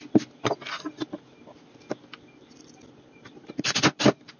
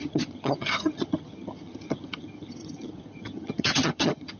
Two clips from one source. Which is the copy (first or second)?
second